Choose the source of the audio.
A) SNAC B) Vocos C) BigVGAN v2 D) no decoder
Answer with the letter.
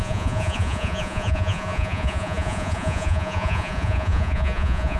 B